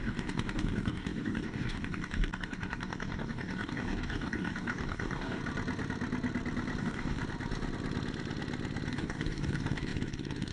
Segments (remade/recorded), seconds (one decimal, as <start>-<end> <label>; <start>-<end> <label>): 0.0-5.4 remade; 5.4-6.8 recorded; 6.8-7.2 remade; 7.2-8.9 recorded; 8.9-10.5 remade